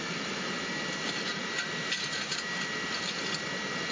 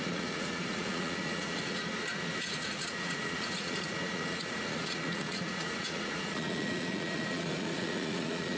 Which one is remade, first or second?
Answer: second